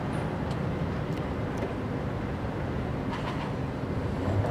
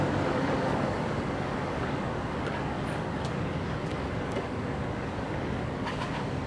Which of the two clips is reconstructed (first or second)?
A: second